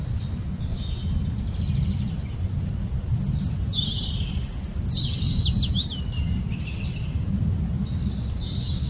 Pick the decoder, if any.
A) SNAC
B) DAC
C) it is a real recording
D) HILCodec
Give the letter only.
C